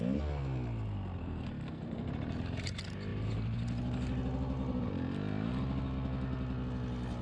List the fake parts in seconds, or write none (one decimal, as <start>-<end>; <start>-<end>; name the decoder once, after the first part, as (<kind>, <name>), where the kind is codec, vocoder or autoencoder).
1.2-2.1 (codec, SNAC)